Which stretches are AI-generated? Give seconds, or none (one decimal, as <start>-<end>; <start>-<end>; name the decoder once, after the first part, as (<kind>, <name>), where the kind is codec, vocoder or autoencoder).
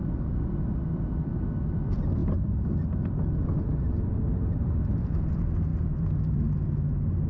2.2-5.2 (vocoder, BigVGAN v2); 5.7-6.5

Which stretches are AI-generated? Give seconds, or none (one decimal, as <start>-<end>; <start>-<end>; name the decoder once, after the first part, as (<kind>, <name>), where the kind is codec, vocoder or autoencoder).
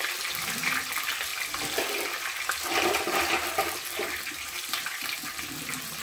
none